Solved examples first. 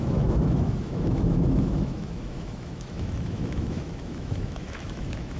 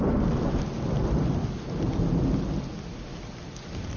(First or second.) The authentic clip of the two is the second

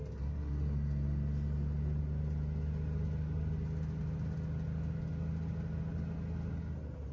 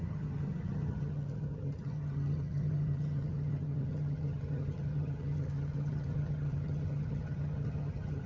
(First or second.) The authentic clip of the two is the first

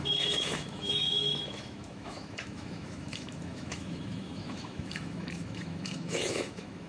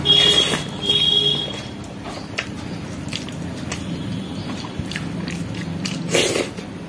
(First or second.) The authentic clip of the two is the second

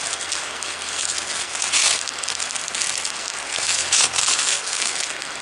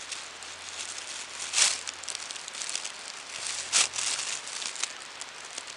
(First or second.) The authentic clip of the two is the second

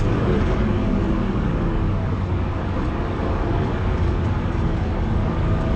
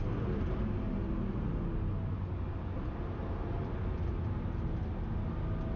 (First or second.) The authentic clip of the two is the second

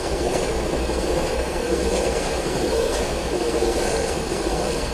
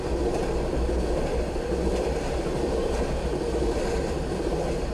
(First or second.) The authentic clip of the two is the second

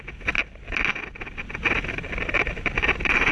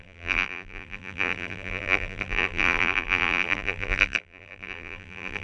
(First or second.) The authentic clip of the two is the first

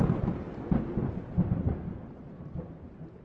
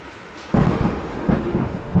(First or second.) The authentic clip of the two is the first